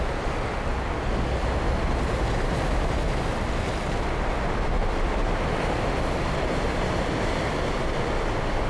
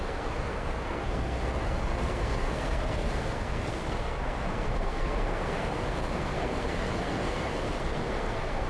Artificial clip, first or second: second